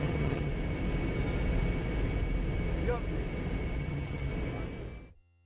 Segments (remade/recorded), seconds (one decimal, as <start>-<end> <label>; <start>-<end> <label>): 0.0-0.5 remade; 0.5-3.8 recorded; 3.8-4.3 remade; 4.3-5.1 recorded; 5.1-5.5 remade